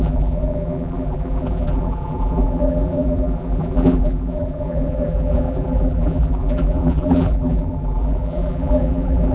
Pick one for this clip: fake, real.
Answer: fake